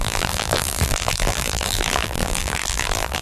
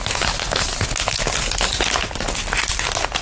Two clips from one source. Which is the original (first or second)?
second